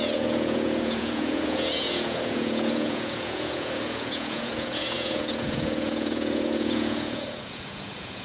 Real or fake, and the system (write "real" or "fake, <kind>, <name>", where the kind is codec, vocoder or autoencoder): fake, vocoder, Vocos